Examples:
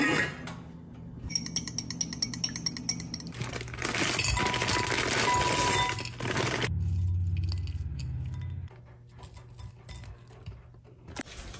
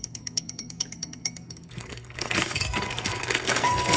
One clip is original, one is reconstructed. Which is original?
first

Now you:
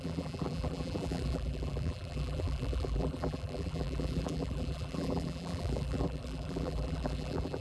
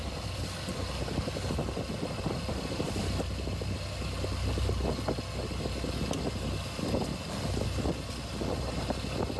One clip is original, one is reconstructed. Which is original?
second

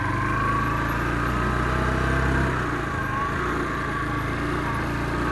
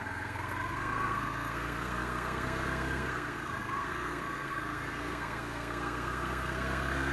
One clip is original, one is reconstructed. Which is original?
first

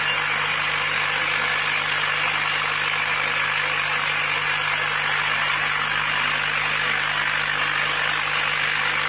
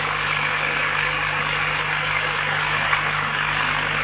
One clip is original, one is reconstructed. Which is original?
first